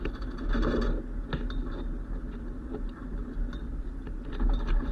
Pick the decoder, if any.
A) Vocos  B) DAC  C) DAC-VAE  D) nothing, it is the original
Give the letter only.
D